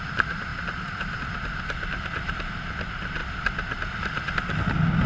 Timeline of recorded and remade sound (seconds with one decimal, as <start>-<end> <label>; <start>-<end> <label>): 0.0-5.1 recorded